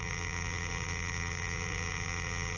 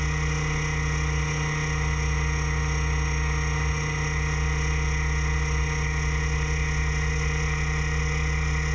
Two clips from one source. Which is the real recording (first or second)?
second